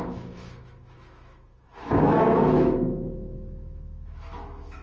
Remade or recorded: remade